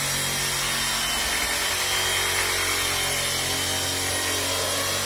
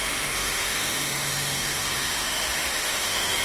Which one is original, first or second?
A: first